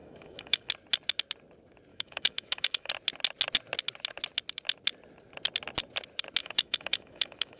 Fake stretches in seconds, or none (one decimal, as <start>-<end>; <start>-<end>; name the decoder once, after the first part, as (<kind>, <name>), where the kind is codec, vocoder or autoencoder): 0.0-0.7 (autoencoder, DAC-VAE); 1.9-2.9; 6.4-7.6